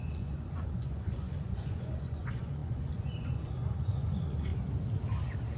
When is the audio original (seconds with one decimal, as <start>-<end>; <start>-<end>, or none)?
4.5-5.6